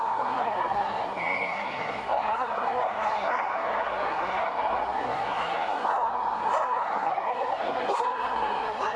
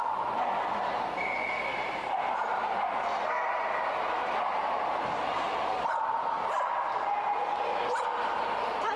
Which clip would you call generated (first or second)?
first